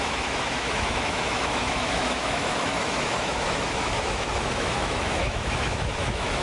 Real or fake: fake